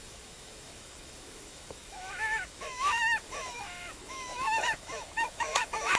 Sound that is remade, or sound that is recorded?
remade